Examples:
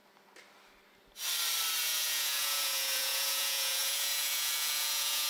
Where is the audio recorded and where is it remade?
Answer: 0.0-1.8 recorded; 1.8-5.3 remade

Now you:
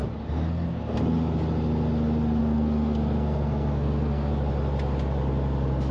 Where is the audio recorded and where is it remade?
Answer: 0.0-2.4 recorded; 2.4-4.3 remade; 4.3-5.9 recorded

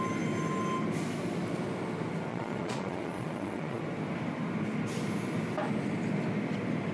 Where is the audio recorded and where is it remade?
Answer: 0.0-2.3 recorded; 2.3-3.8 remade; 3.8-6.9 recorded

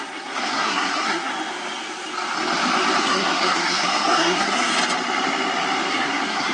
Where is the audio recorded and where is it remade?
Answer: 0.0-1.3 remade; 1.3-3.0 recorded; 3.0-4.7 remade; 4.7-5.9 recorded; 5.9-6.5 remade

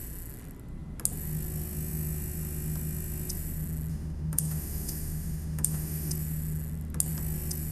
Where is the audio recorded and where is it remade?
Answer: 0.0-3.9 recorded; 3.9-6.1 remade; 6.1-7.7 recorded

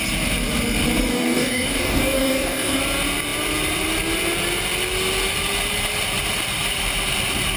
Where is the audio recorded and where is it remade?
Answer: 0.0-1.1 recorded; 1.1-2.8 remade; 2.8-7.6 recorded

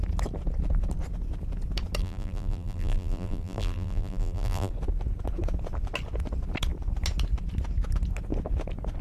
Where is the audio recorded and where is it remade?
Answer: 0.0-2.0 recorded; 2.0-4.7 remade; 4.7-9.0 recorded

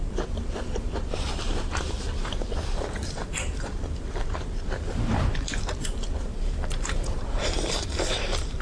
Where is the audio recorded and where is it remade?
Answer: 0.0-8.6 remade